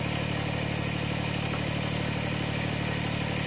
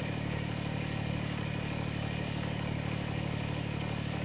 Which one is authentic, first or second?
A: first